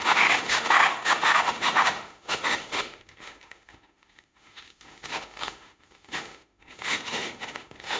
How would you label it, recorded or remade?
remade